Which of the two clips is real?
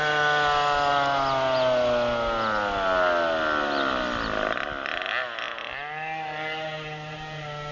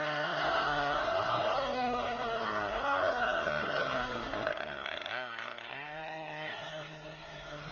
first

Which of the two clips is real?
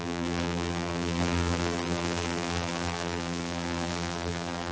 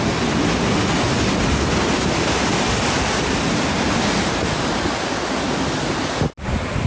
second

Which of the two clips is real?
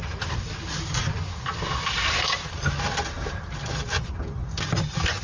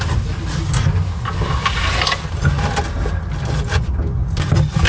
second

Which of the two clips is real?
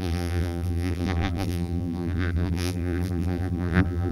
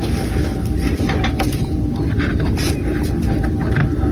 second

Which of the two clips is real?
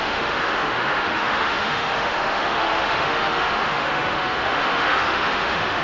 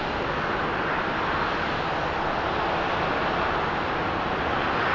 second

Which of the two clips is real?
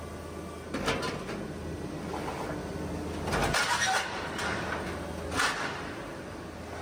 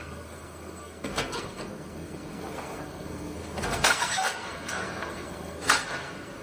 first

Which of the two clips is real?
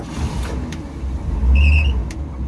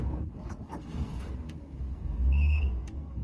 first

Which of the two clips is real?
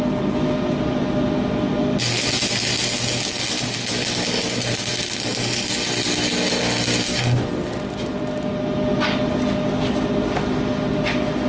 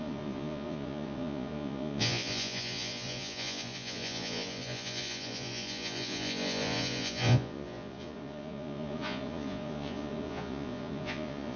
first